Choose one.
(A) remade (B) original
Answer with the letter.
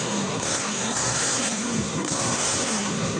A